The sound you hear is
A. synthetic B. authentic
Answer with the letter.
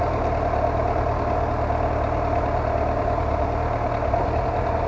B